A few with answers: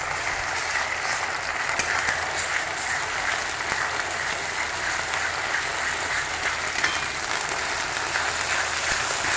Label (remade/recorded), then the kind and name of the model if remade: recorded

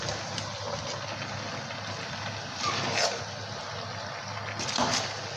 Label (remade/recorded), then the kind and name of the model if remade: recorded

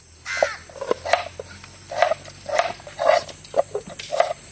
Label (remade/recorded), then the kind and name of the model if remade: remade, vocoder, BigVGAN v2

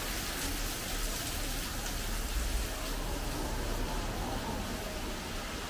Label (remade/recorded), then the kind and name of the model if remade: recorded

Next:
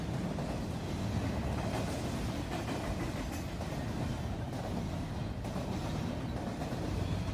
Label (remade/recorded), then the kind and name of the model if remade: recorded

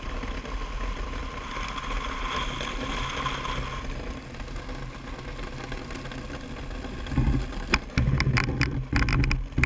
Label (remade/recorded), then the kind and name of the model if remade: recorded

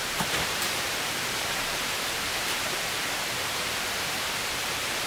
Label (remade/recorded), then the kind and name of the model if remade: remade, vocoder, BigVGAN v2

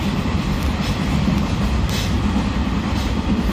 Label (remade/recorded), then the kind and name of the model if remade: remade, vocoder, BigVGAN v2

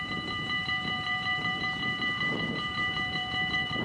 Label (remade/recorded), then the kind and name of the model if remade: remade, vocoder, BigVGAN v2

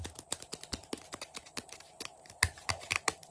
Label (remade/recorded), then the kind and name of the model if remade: remade, vocoder, BigVGAN v2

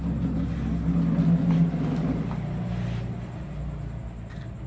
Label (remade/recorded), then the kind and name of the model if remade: recorded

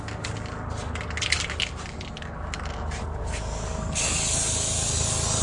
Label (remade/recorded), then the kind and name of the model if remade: recorded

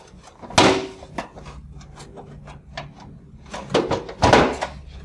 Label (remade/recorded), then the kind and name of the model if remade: recorded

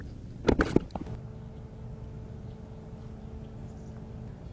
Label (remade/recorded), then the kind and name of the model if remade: recorded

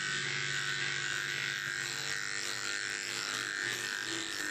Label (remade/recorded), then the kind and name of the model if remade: recorded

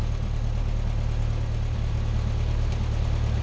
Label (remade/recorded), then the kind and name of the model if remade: recorded